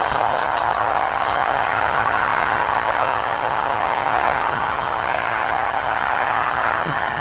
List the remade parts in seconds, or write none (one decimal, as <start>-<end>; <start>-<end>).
0.0-7.2